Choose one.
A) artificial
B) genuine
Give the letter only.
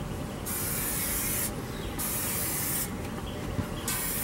B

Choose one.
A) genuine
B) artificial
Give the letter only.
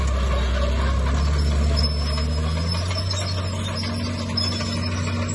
A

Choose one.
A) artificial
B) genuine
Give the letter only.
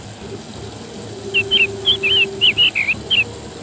B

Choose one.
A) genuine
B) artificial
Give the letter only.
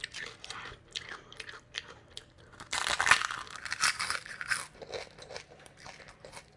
B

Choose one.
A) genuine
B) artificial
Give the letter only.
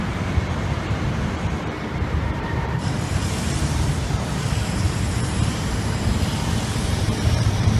B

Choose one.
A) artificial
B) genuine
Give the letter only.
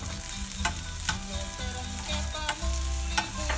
B